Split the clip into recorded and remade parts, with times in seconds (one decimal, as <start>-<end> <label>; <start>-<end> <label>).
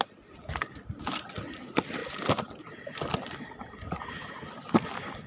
0.0-5.3 recorded